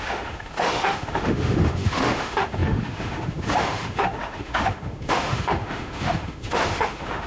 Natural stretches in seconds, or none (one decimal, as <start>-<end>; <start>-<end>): none